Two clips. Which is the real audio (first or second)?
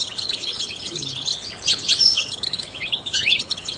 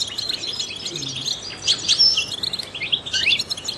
second